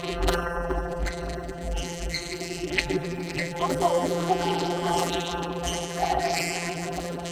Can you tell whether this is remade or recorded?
remade